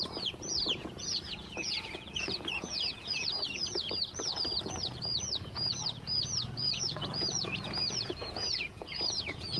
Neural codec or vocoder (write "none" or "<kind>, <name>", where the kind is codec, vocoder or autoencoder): vocoder, Vocos